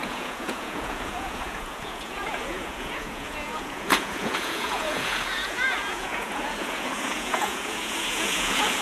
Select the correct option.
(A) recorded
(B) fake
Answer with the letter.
B